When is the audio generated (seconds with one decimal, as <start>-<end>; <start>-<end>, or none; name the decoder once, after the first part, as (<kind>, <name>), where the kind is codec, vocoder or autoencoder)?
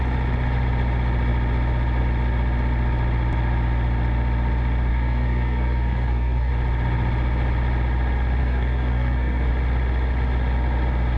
4.9-6.5 (codec, SNAC); 8.4-9.5